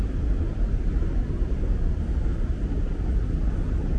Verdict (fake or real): real